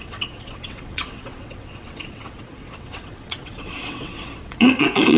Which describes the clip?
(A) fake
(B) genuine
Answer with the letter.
A